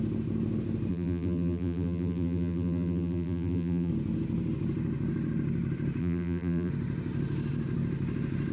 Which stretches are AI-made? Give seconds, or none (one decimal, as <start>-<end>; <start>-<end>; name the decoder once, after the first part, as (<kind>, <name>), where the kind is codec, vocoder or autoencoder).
0.9-3.9 (vocoder, BigVGAN v2); 6.0-6.7